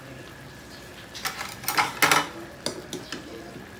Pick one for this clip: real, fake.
real